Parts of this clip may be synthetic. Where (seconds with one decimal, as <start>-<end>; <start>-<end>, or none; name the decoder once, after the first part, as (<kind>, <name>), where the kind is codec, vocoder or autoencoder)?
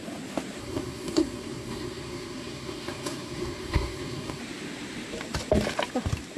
0.6-4.4 (codec, SNAC)